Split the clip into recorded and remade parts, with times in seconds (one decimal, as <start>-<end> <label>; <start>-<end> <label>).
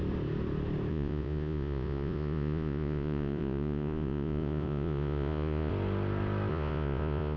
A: 0.0-0.9 recorded; 0.9-5.7 remade; 5.7-6.5 recorded; 6.5-7.4 remade